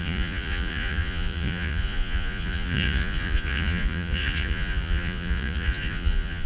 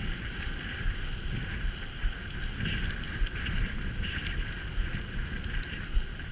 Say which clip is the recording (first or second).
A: second